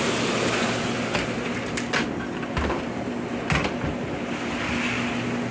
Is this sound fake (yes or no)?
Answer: no